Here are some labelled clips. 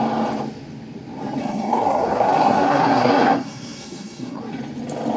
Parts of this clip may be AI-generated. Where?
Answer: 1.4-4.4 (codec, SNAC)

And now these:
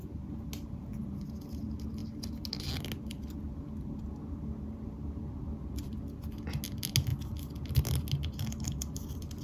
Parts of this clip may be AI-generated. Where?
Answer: none

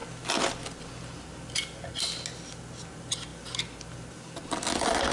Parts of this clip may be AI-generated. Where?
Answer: none

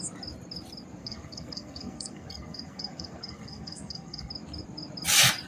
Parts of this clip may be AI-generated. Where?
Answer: 1.0-4.3 (codec, SNAC)

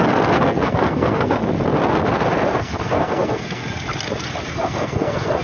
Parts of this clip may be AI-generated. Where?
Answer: 0.0-1.4 (codec, SNAC); 2.6-3.6; 4.5-5.4

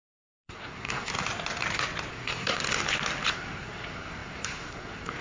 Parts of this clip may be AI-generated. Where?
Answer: 0.0-1.1 (codec, SNAC); 2.1-2.6; 3.3-5.2

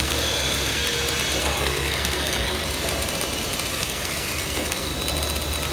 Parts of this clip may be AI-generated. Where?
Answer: 0.0-0.8 (codec, SNAC); 1.4-2.6; 3.7-4.9